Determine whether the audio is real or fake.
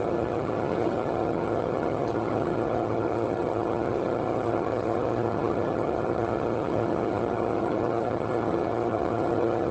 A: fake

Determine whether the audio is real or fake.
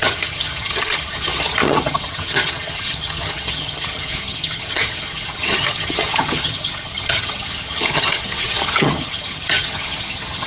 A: fake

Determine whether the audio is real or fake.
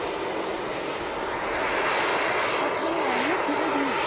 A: real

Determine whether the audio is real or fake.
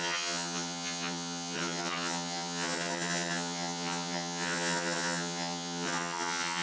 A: fake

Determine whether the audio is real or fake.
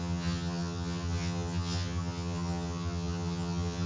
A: fake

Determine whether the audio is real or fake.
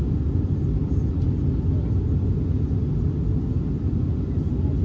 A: real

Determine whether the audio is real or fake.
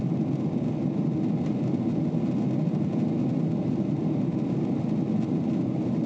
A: real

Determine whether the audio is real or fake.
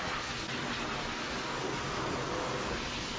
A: real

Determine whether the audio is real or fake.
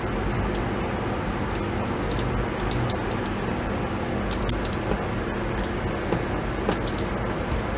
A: real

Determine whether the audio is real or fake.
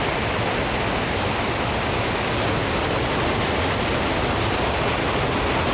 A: real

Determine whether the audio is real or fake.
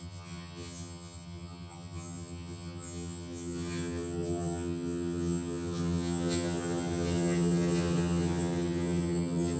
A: fake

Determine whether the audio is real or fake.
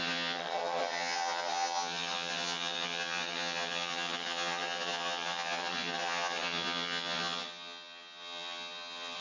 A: fake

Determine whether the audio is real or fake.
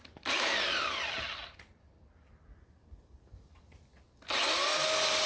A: real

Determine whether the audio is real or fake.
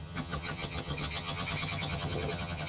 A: fake